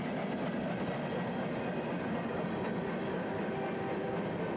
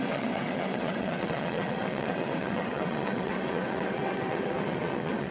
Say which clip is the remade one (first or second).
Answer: second